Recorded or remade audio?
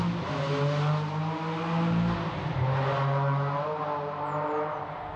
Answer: recorded